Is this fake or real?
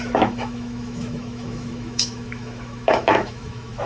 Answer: fake